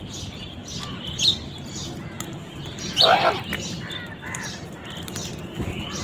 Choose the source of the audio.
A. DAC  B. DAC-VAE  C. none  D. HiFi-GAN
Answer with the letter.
C